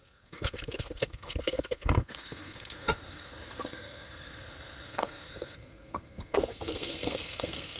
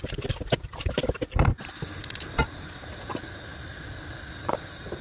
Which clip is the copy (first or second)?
first